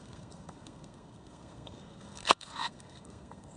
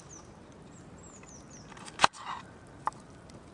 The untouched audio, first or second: second